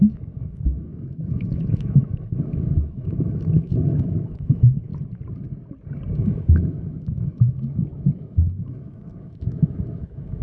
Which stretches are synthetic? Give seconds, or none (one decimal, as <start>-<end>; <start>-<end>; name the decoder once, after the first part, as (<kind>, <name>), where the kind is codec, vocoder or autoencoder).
0.0-4.9 (autoencoder, DAC-VAE); 6.1-10.4